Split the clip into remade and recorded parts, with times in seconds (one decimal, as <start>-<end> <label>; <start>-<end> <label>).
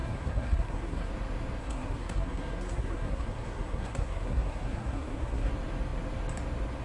0.0-1.1 remade; 1.1-1.6 recorded; 1.6-5.5 remade; 5.5-6.8 recorded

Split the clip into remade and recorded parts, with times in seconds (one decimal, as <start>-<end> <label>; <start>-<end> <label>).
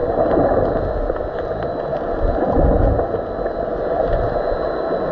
0.0-0.8 remade; 0.8-5.1 recorded